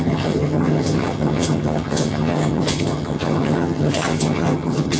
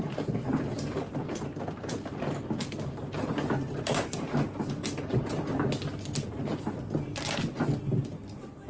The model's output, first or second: first